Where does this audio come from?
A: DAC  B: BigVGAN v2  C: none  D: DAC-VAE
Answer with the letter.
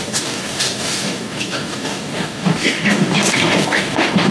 A